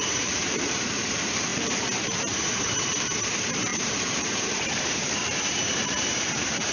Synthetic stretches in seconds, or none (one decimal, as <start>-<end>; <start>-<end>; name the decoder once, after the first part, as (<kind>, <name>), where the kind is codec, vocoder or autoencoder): 0.0-6.7 (vocoder, BigVGAN v2)